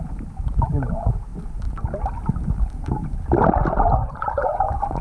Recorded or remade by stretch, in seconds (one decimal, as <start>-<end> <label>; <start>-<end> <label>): 0.0-4.0 recorded; 4.0-5.0 remade